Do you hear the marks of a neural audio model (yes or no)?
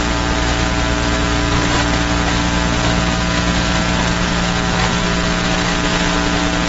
no